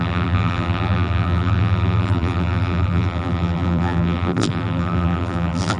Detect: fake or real fake